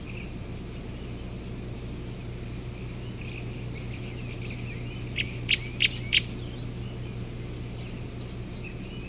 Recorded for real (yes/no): yes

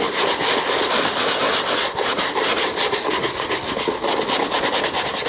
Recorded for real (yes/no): yes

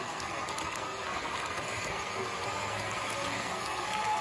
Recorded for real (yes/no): no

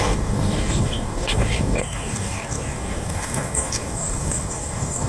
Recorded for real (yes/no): no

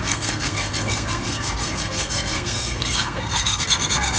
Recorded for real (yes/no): no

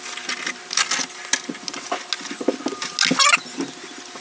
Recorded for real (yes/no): yes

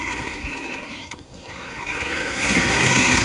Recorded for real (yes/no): no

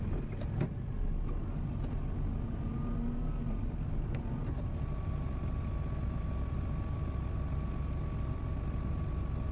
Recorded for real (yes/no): yes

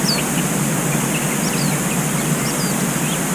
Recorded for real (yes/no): yes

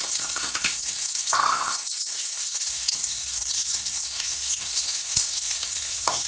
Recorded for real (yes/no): no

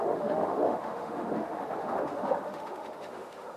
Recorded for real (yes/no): no